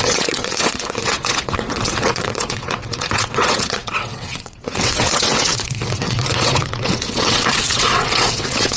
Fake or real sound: fake